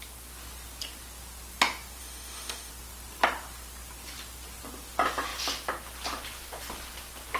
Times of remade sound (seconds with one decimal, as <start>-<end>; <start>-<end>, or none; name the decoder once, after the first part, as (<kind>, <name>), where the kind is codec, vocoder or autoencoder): 2.0-2.7 (autoencoder, DAC-VAE)